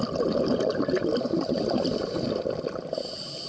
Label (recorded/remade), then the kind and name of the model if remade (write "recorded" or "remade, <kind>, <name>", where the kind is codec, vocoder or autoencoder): recorded